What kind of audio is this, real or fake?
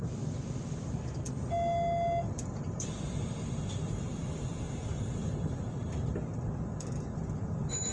real